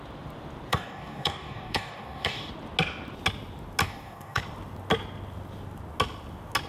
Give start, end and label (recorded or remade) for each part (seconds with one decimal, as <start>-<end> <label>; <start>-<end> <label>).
0.0-0.7 recorded; 0.7-2.5 remade; 2.5-3.8 recorded; 3.8-4.4 remade; 4.4-6.7 recorded